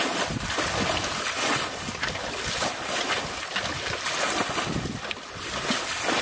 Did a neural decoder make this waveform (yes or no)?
no